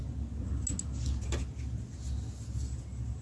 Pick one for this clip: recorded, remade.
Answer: recorded